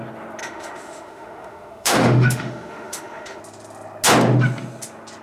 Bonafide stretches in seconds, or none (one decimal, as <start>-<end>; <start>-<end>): 0.0-0.4; 3.4-5.2